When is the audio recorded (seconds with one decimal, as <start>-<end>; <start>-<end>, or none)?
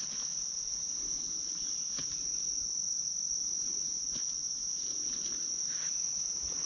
0.0-6.7